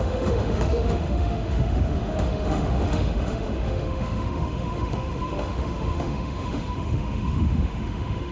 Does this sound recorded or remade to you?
remade